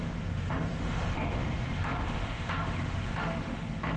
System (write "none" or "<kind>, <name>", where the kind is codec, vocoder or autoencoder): autoencoder, DAC-VAE